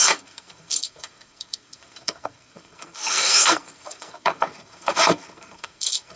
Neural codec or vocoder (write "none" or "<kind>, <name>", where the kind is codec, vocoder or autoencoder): codec, SNAC